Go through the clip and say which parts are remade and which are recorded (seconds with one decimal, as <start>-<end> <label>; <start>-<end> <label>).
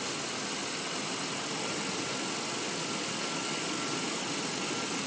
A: 0.0-5.1 recorded